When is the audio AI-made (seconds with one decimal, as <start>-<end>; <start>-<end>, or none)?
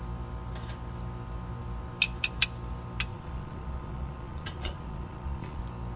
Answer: 3.1-5.6